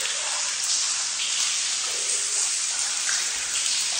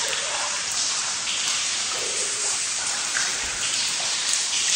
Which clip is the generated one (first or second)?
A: second